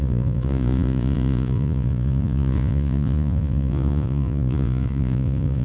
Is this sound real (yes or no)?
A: no